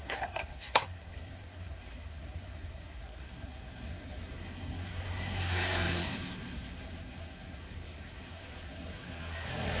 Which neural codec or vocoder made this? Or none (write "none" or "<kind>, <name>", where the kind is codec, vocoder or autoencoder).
codec, SNAC